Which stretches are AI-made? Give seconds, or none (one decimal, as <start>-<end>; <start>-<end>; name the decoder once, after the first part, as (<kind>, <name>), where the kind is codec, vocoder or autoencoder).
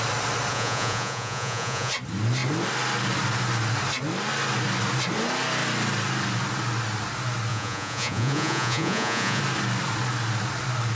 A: 0.5-1.9 (vocoder, Vocos); 7.5-9.4